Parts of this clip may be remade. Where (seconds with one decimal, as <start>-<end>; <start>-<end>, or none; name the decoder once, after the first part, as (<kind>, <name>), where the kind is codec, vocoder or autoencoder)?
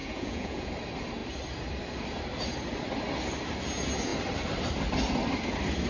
0.0-0.7 (vocoder, Vocos)